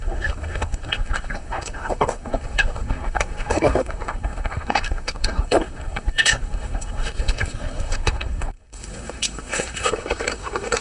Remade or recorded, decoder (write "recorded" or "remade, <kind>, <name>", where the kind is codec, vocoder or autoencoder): remade, codec, SNAC